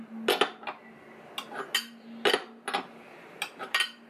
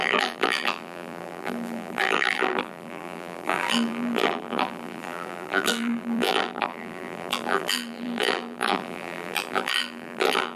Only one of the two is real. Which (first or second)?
first